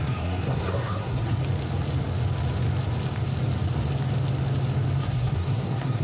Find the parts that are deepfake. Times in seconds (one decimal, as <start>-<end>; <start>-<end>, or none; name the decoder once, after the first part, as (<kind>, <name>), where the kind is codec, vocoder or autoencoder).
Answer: 0.0-1.4 (codec, SNAC); 5.0-6.0